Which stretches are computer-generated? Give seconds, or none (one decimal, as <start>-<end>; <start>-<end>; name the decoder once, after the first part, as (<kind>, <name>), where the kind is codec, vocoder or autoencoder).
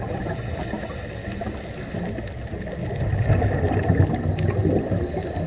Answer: none